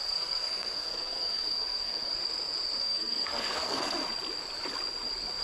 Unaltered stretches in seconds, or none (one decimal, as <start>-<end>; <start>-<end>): 2.2-2.8; 4.0-5.4